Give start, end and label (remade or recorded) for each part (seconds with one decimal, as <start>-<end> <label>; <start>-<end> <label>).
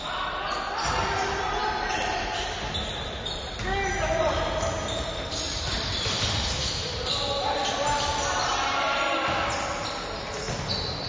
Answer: 0.0-11.1 recorded